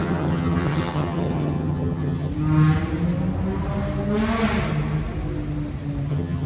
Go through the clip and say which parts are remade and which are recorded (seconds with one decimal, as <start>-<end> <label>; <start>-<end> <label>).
0.0-2.3 remade; 2.3-6.1 recorded; 6.1-6.5 remade